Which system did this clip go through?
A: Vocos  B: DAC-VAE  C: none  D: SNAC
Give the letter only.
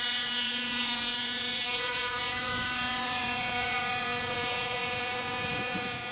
A